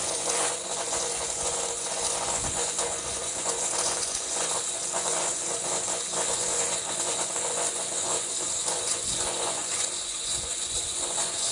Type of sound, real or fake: fake